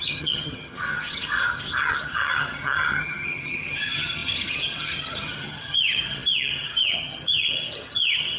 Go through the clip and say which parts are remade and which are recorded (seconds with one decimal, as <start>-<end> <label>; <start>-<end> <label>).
0.0-8.4 remade